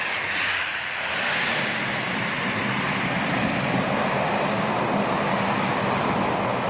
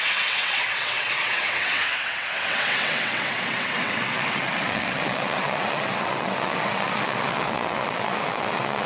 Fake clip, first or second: second